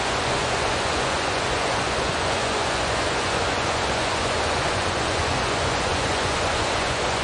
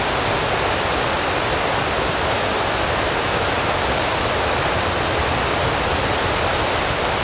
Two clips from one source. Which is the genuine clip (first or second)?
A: second